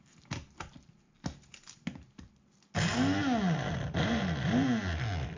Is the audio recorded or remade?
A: recorded